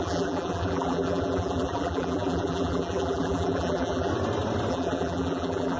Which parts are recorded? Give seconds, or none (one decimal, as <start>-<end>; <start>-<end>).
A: 4.1-4.7